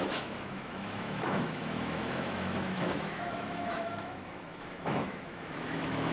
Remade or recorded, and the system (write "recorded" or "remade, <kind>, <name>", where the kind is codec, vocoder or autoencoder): remade, autoencoder, DAC-VAE